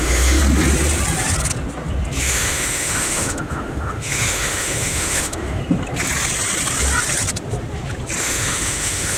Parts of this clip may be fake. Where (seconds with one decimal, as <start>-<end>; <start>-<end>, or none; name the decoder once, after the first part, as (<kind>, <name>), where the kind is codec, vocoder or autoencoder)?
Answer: 0.0-0.4 (autoencoder, DAC-VAE); 2.2-5.6; 8.2-9.2